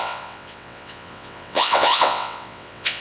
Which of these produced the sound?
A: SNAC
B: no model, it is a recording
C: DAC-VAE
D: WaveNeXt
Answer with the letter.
D